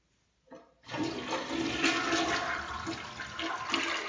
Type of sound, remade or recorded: recorded